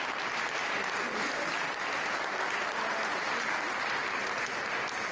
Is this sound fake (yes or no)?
no